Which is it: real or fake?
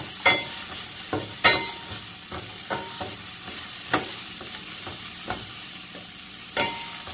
real